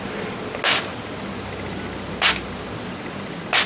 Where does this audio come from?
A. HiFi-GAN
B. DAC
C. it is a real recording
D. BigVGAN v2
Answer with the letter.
C